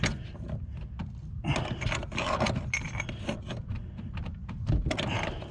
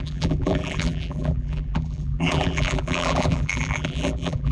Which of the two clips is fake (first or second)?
second